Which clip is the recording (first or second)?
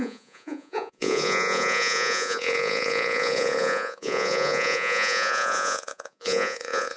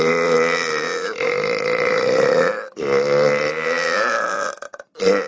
second